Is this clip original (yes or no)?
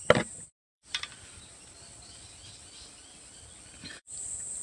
no